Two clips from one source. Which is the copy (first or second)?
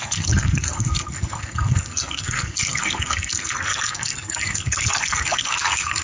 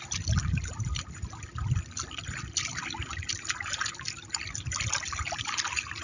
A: first